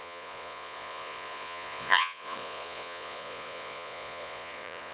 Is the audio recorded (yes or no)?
no